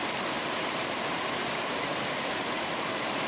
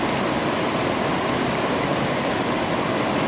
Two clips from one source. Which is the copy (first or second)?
first